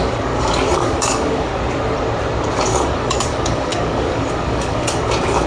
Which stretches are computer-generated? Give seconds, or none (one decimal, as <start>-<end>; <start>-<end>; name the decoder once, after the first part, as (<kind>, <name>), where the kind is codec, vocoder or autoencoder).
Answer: 0.0-1.5 (codec, DAC); 2.5-5.5